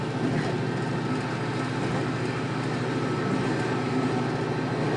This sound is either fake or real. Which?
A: real